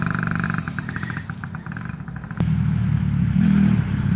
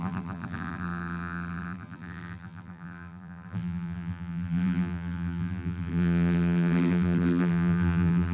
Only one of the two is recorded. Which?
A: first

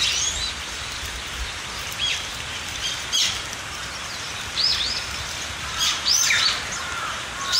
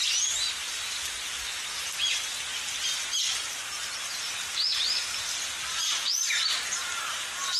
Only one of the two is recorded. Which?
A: second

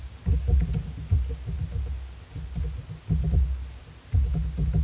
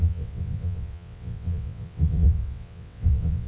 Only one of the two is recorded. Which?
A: first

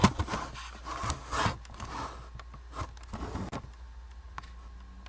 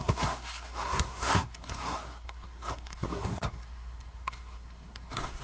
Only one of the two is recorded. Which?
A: first